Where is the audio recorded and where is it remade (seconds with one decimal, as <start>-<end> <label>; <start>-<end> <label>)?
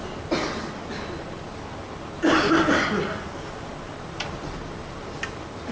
0.0-5.7 recorded